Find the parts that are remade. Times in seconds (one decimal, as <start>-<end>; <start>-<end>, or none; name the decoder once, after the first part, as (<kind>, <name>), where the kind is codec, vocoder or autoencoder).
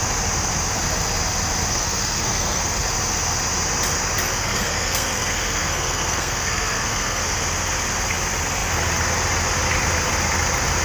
1.7-2.8 (codec, SNAC); 4.4-7.2